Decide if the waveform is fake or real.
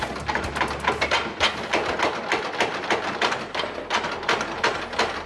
real